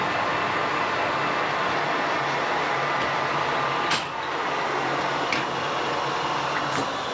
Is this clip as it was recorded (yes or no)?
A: yes